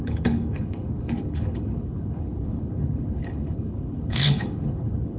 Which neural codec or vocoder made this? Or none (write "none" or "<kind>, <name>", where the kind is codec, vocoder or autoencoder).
codec, HILCodec